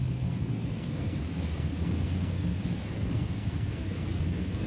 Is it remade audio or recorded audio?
remade